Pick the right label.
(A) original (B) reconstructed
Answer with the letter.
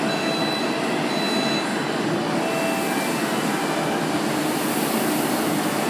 A